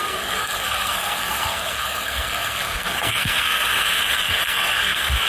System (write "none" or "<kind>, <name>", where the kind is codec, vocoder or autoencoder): codec, SNAC